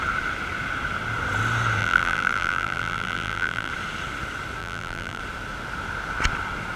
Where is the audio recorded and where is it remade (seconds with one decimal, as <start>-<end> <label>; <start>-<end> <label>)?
0.0-1.8 recorded; 1.8-3.7 remade; 3.7-4.6 recorded; 4.6-5.2 remade; 5.2-6.8 recorded